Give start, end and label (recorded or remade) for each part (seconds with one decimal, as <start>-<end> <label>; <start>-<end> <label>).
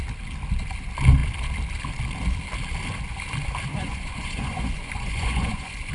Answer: 0.0-3.7 recorded; 3.7-5.9 remade